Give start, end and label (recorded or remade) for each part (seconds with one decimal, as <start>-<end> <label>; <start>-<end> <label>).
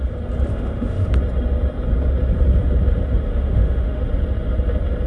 0.0-0.5 recorded; 0.5-1.1 remade; 1.1-3.3 recorded; 3.3-4.0 remade; 4.0-5.1 recorded